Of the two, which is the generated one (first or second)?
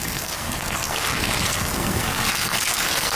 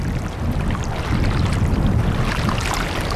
first